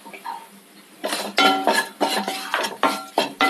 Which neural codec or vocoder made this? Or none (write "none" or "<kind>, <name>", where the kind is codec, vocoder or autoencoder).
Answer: none